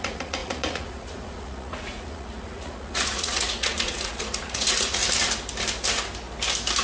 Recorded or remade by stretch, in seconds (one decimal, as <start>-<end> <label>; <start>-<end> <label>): 0.0-5.0 remade; 5.0-6.8 recorded